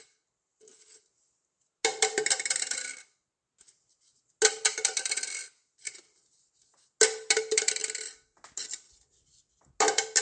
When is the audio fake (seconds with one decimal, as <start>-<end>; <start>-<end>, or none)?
none